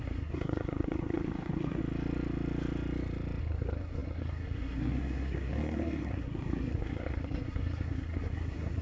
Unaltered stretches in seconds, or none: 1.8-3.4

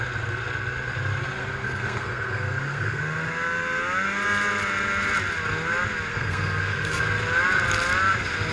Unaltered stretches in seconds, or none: 0.0-1.4; 3.0-6.1; 7.0-8.5

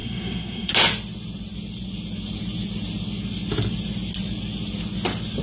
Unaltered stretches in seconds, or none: 0.7-5.4

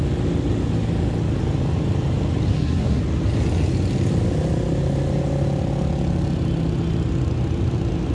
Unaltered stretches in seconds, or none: 0.0-2.5; 3.0-8.1